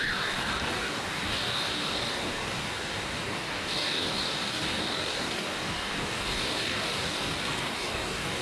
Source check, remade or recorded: remade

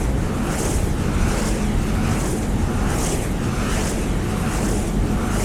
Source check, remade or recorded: recorded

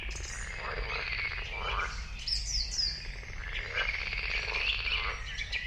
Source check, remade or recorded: recorded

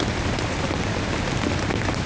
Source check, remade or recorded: recorded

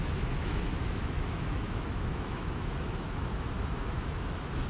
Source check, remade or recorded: remade